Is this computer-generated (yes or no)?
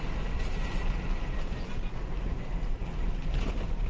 no